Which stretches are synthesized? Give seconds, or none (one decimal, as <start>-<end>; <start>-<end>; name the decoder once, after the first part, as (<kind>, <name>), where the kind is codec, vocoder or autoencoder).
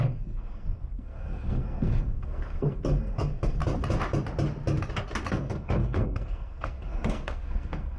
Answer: 0.0-3.6 (codec, SNAC); 5.3-8.0